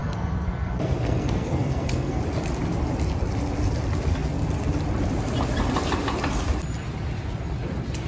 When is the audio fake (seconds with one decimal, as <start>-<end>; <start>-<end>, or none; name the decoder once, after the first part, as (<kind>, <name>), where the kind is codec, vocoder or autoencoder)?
0.0-2.2 (codec, SNAC)

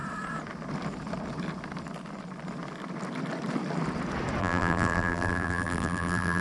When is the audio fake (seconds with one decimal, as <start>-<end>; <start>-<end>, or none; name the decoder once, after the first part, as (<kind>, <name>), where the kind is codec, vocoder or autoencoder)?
4.4-6.4 (vocoder, BigVGAN v2)

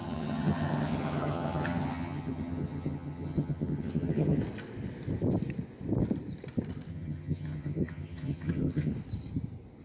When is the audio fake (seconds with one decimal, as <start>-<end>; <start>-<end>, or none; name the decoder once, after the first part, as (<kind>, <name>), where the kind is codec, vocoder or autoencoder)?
0.0-4.4 (vocoder, HiFi-GAN); 6.9-8.9